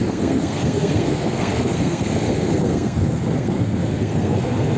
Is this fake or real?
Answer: fake